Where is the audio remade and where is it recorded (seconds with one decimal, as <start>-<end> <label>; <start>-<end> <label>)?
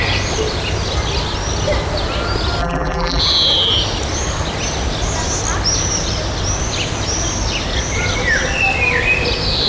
0.0-2.6 recorded; 2.6-3.2 remade; 3.2-9.7 recorded